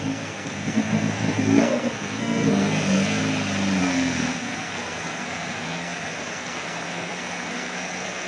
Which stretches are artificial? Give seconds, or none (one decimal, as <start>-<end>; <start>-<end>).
0.0-3.2; 3.8-8.3